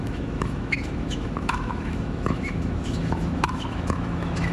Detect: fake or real fake